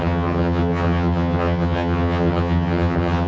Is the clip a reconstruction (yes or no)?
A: yes